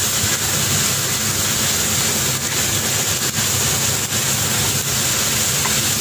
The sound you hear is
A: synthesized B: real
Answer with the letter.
B